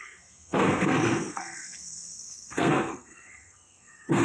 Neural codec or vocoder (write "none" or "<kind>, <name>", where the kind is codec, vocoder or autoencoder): codec, SNAC